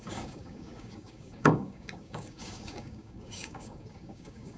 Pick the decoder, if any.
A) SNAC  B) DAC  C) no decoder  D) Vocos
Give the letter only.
B